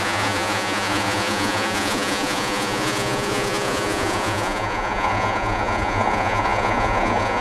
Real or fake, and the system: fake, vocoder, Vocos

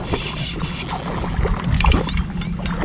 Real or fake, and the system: real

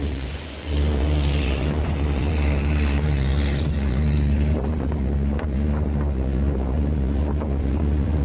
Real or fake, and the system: fake, vocoder, Vocos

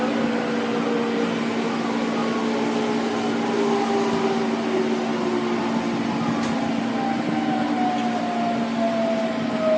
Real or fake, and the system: real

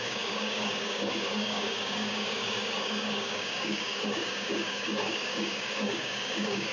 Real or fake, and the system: fake, codec, DAC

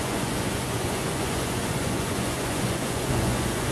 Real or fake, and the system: fake, vocoder, Vocos